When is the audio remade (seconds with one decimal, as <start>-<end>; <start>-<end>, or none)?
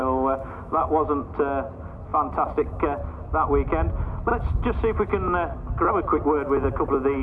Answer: 0.0-0.8